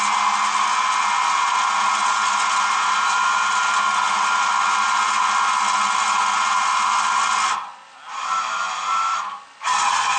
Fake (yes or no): no